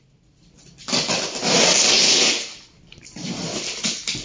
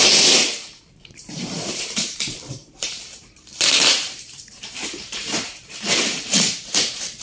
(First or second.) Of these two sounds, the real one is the first